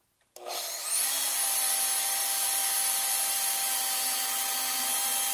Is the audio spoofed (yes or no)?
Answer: no